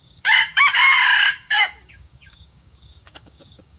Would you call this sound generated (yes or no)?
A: yes